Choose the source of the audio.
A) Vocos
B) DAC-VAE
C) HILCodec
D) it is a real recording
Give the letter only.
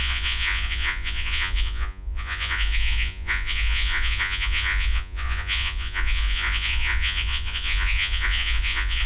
A